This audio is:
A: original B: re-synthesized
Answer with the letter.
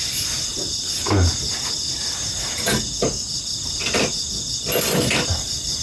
A